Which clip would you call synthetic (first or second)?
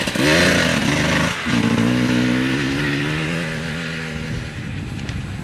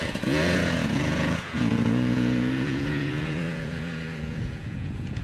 second